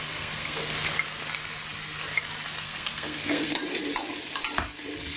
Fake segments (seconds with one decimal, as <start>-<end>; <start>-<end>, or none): 0.0-0.6; 2.6-3.6